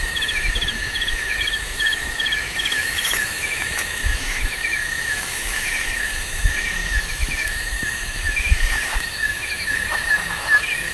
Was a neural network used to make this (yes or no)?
yes